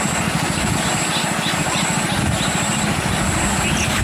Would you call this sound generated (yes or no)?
no